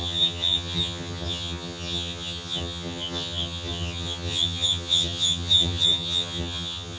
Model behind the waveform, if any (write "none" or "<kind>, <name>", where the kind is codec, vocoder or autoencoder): vocoder, HiFi-GAN